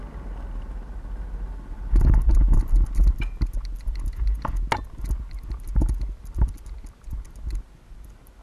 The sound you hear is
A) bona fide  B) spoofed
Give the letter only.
A